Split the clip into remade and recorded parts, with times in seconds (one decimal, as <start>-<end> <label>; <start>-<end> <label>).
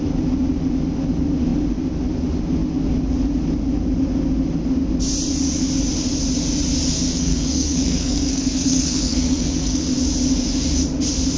0.0-7.1 recorded; 7.1-9.9 remade; 9.9-11.4 recorded